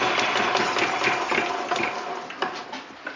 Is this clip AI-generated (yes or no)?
no